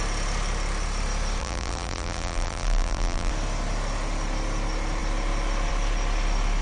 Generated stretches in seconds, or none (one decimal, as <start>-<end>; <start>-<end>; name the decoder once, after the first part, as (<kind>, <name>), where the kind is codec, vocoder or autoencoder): 1.4-3.3 (vocoder, BigVGAN v2)